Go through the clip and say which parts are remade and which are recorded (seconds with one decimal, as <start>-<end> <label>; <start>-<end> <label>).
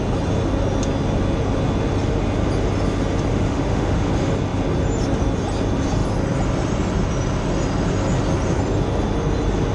0.0-3.3 recorded; 3.3-4.1 remade; 4.1-9.7 recorded